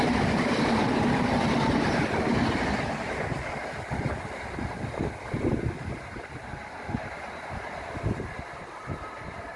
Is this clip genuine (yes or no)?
yes